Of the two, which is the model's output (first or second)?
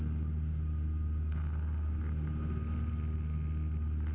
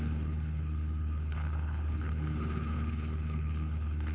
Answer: second